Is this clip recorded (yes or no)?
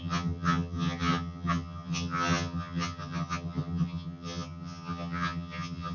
no